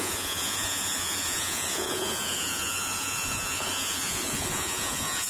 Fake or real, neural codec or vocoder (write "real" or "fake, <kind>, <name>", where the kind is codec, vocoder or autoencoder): fake, vocoder, Vocos